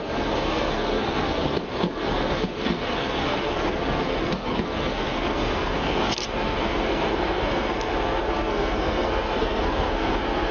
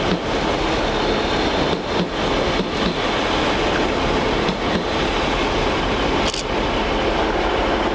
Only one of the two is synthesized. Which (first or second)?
first